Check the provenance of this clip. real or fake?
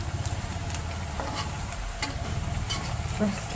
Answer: fake